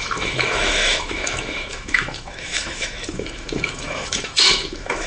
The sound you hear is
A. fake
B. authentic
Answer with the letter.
A